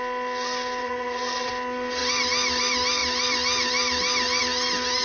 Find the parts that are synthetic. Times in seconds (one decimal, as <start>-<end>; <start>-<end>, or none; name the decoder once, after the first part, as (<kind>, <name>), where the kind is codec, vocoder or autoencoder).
0.8-1.5 (vocoder, WaveNeXt)